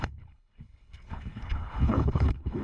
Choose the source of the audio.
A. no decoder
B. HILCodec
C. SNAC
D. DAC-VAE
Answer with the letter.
B